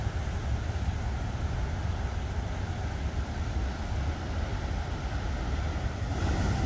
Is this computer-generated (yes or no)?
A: no